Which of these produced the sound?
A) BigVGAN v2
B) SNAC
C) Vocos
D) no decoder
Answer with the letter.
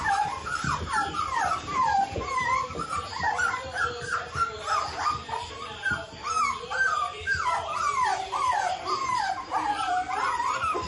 A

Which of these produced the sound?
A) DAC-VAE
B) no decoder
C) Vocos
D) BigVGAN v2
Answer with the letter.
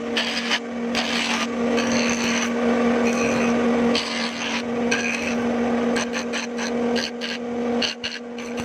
B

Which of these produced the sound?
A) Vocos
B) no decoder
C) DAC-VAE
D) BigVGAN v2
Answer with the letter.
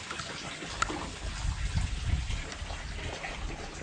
B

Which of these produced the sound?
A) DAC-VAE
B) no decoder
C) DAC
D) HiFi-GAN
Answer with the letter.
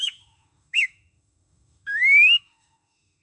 A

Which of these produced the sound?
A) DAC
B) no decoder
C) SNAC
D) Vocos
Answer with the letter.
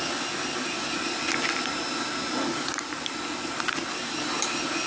B